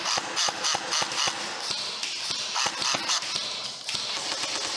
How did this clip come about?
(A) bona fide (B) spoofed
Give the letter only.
A